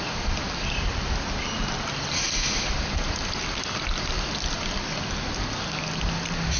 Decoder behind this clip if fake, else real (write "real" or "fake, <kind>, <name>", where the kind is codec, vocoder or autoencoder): real